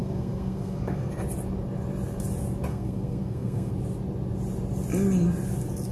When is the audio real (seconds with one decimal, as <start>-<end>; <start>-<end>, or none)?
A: 1.1-2.7; 3.7-5.9